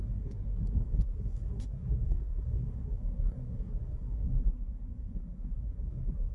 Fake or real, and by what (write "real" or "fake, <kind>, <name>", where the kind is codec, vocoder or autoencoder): fake, codec, SNAC